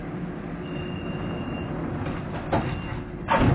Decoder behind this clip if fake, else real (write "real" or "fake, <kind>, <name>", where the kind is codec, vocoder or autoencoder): real